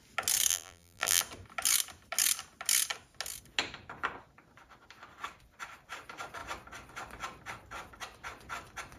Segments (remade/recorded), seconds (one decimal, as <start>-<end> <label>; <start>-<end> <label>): 0.0-0.5 recorded; 0.5-1.2 remade; 1.2-9.0 recorded